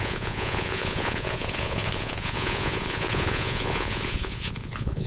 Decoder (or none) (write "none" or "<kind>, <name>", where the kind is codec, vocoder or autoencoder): vocoder, Vocos